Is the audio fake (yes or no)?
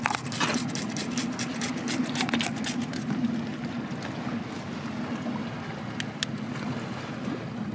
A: no